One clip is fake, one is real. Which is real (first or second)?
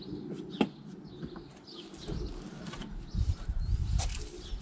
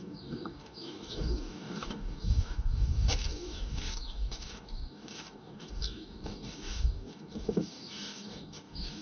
first